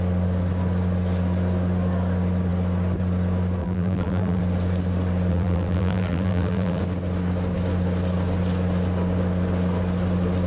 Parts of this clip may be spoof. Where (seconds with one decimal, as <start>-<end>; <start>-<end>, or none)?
3.6-4.4; 5.3-6.8